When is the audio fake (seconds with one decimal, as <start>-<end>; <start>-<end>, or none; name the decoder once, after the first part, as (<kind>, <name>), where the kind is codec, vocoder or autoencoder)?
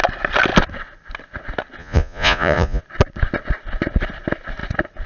1.8-2.8 (vocoder, Vocos)